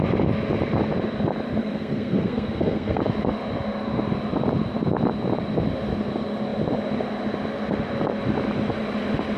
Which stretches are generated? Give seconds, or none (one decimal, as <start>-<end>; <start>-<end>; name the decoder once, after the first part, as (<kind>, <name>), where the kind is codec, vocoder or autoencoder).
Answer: 1.6-3.0 (codec, SNAC)